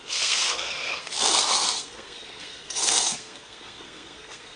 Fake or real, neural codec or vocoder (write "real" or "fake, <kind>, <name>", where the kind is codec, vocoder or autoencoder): fake, codec, SNAC